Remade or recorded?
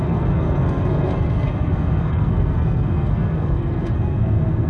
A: remade